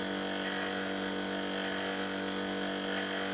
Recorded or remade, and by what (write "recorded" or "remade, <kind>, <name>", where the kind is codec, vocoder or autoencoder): recorded